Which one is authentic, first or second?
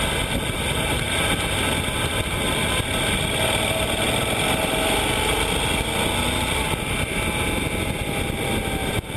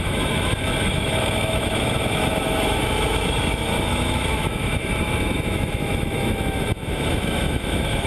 first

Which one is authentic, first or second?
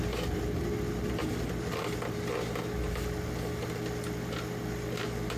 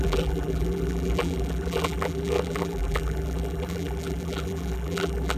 first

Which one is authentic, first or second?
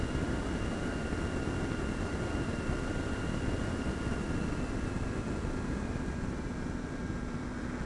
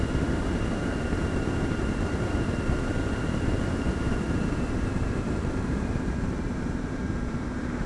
first